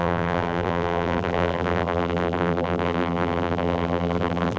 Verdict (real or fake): fake